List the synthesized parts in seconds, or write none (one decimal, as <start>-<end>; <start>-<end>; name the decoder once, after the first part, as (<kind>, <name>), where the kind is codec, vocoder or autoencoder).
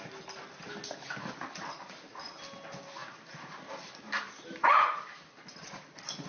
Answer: 3.0-4.8 (vocoder, BigVGAN v2)